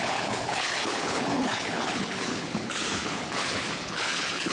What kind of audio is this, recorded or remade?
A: remade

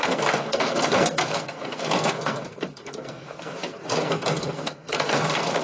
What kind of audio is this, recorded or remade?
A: remade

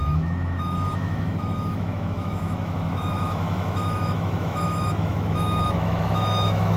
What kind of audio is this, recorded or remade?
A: remade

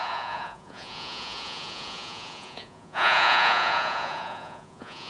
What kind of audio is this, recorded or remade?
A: remade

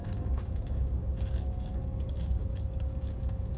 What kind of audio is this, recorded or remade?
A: remade